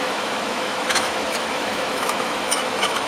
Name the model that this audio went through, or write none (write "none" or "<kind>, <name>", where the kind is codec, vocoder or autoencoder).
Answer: autoencoder, DAC-VAE